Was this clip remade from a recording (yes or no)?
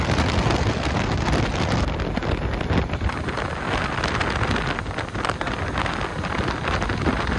no